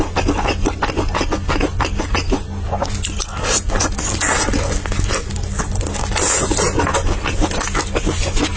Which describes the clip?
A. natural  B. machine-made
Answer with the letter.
A